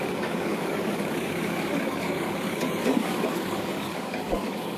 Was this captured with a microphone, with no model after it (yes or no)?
no